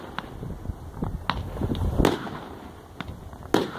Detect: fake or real real